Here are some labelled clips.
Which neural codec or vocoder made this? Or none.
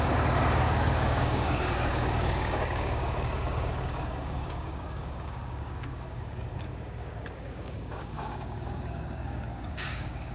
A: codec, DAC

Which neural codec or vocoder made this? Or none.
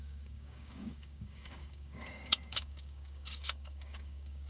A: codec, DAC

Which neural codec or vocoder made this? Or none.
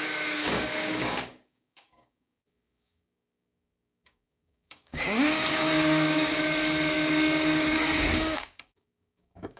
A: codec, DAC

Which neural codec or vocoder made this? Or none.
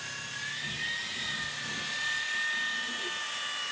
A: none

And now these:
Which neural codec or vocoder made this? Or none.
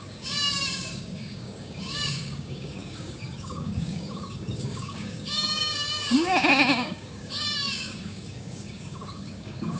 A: codec, DAC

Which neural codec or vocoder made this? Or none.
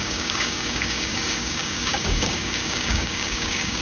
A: codec, DAC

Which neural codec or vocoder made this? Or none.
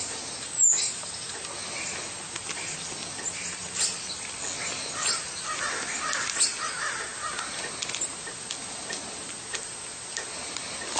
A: none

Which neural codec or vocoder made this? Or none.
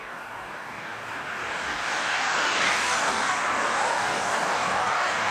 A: codec, DAC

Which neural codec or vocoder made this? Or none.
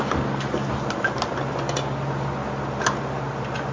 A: none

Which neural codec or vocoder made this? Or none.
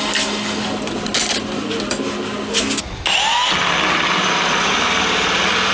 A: none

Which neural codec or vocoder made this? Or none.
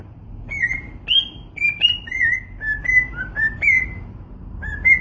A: none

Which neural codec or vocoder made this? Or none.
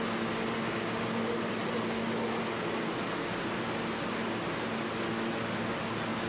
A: none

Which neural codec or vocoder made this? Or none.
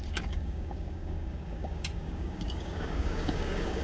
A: codec, DAC